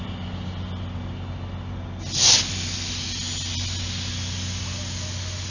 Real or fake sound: real